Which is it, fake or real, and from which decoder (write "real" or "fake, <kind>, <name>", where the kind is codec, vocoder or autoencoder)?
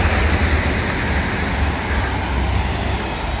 real